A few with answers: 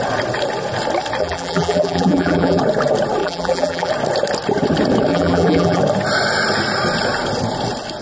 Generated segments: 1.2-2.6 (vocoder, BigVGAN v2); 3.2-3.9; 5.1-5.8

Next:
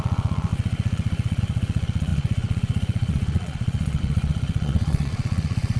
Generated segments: 0.0-5.8 (vocoder, Vocos)

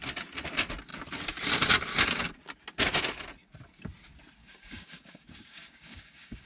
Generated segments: 4.4-6.5 (codec, DAC)

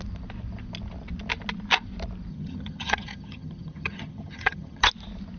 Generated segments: 2.3-4.9 (vocoder, HiFi-GAN)

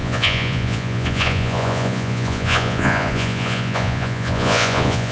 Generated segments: 0.0-5.1 (vocoder, Vocos)

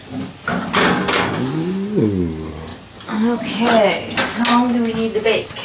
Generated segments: none

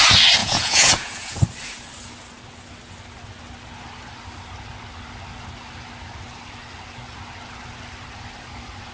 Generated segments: 0.4-1.4 (vocoder, Vocos)